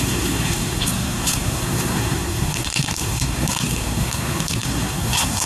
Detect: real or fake fake